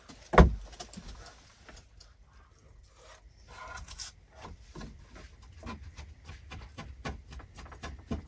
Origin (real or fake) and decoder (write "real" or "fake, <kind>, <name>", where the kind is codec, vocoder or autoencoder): real